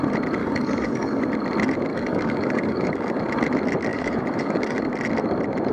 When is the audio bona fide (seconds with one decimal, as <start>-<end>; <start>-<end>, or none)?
0.0-0.4; 1.2-1.9; 3.2-3.9; 4.8-5.7